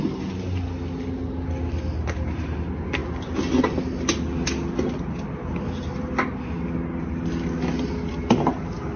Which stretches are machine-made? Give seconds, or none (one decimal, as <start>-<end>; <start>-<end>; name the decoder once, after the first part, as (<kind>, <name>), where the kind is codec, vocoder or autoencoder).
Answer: none